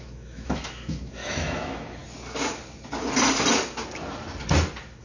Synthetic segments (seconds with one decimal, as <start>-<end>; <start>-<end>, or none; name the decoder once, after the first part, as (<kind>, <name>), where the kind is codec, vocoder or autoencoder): 0.0-2.0 (autoencoder, DAC-VAE)